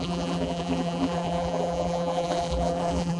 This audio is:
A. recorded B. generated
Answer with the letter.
B